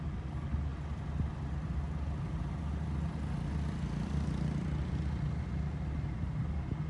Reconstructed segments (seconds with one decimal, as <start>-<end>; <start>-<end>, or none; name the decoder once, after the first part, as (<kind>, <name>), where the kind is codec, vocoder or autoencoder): none